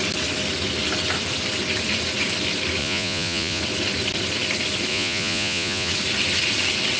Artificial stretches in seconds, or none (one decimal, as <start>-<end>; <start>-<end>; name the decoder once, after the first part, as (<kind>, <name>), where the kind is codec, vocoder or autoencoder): 2.8-3.6 (vocoder, Vocos); 4.9-5.9